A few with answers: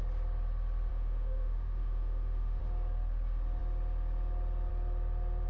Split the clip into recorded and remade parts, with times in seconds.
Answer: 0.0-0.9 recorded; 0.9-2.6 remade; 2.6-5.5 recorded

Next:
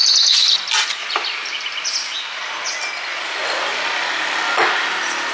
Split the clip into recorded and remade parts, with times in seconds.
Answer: 0.0-5.3 recorded

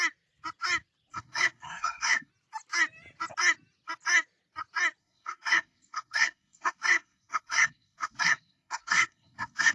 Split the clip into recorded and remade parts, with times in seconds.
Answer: 0.0-1.1 recorded; 1.1-2.3 remade; 2.3-5.0 recorded; 5.0-9.7 remade

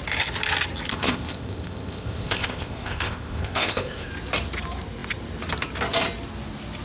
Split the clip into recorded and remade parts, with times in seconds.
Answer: 0.0-0.9 recorded; 0.9-4.1 remade; 4.1-6.8 recorded